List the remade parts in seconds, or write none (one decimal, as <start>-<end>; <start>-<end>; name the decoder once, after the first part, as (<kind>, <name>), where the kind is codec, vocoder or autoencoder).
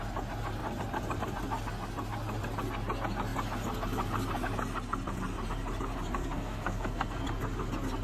6.2-7.2 (codec, SNAC)